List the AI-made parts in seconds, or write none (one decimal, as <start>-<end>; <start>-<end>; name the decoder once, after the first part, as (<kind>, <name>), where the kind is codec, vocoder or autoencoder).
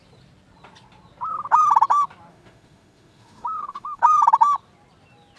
2.3-4.0 (autoencoder, DAC-VAE)